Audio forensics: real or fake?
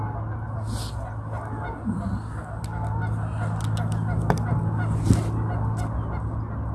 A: real